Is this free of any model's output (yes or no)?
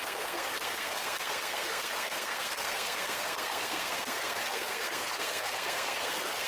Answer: no